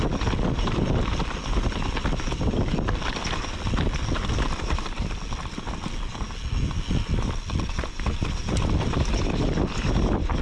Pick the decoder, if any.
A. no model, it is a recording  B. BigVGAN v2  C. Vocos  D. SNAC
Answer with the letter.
A